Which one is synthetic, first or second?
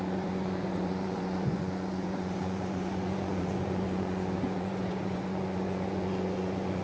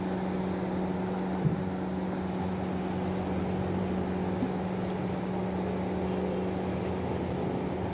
first